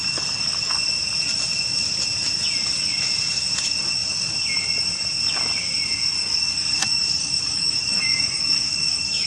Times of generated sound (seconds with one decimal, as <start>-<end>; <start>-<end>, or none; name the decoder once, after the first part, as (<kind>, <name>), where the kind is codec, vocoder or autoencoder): 0.0-0.7 (codec, DAC); 6.2-9.3